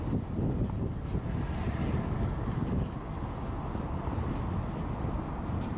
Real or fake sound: real